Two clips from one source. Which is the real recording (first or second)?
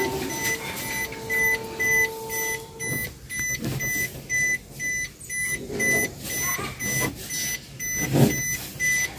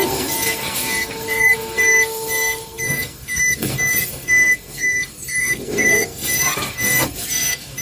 first